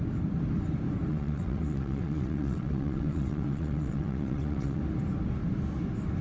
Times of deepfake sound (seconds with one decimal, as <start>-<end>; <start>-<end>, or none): 1.1-4.8